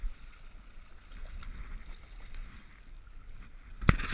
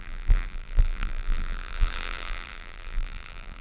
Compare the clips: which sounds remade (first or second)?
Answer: second